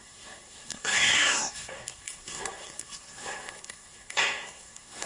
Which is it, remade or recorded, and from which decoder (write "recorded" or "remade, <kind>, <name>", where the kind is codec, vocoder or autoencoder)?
remade, codec, SNAC